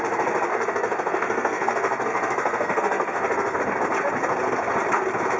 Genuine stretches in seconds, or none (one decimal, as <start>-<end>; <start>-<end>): 0.0-0.5; 3.6-5.4